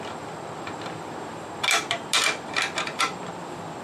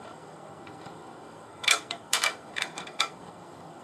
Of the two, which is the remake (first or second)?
second